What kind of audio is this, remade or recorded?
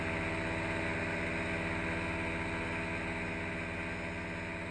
recorded